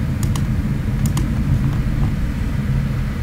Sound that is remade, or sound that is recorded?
recorded